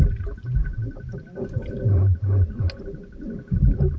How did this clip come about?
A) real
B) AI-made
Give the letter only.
A